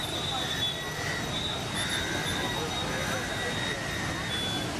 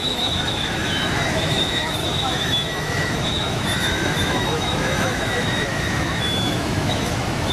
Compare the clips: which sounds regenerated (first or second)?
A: second